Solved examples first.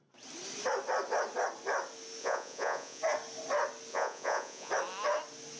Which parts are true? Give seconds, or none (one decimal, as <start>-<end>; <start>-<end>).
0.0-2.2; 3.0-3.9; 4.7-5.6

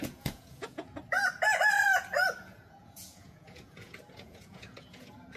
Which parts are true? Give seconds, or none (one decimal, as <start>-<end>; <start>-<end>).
1.0-2.4

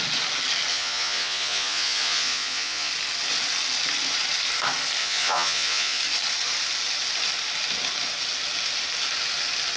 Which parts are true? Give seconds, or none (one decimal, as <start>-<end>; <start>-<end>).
0.0-0.7; 2.9-5.0; 6.0-9.8

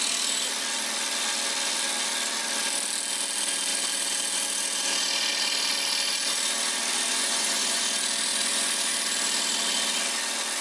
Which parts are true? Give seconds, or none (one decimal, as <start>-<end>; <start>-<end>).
0.0-7.1; 7.8-8.3; 8.9-10.6